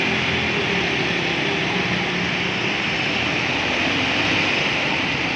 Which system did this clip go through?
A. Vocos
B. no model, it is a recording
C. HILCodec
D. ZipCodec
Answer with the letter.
B